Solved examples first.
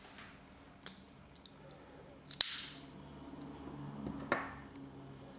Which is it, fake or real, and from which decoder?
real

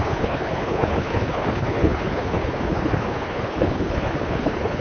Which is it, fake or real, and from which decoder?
fake, codec, HILCodec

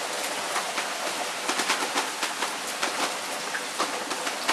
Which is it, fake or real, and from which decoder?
real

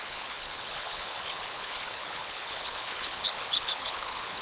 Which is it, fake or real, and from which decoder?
fake, codec, HILCodec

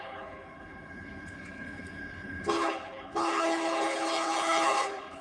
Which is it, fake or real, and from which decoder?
fake, codec, HILCodec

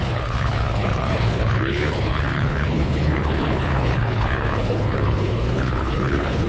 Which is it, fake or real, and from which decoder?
fake, codec, HILCodec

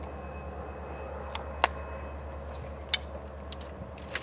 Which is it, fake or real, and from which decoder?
real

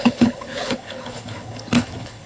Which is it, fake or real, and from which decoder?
fake, codec, HILCodec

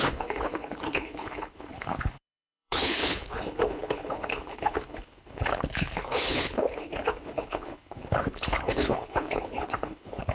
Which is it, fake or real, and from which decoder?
fake, codec, HILCodec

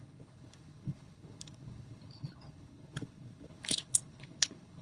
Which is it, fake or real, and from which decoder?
fake, codec, HILCodec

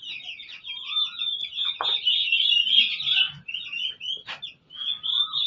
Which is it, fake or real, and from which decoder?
real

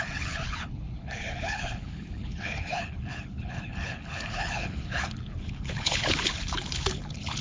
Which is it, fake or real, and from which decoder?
fake, codec, HILCodec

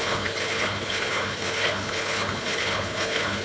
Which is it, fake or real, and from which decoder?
fake, codec, HILCodec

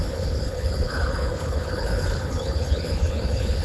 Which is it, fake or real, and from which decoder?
fake, codec, HILCodec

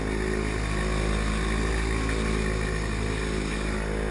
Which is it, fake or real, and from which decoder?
real